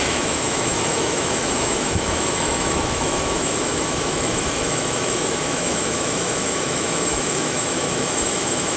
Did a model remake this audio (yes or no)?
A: yes